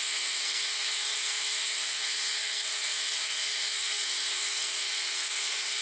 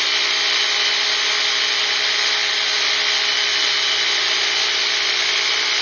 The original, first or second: second